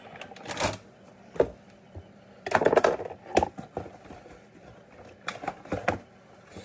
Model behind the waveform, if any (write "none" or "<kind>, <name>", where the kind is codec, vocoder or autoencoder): none